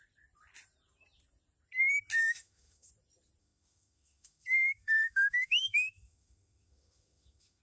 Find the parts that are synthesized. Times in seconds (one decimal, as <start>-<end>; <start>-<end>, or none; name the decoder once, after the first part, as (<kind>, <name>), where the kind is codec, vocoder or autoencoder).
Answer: 2.2-2.9 (autoencoder, DAC-VAE); 3.4-7.6